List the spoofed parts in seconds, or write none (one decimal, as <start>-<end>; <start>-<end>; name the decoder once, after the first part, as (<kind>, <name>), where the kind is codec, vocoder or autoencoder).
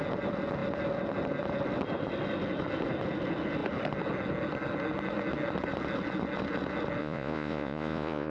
7.0-8.3 (vocoder, Vocos)